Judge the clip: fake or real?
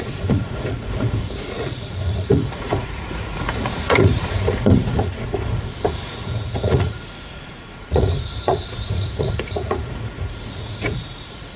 fake